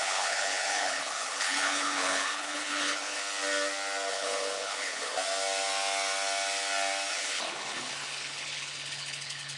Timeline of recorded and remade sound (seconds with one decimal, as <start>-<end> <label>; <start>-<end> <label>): 0.0-3.2 remade; 3.2-4.1 recorded; 4.1-5.1 remade; 5.1-7.1 recorded; 7.1-9.6 remade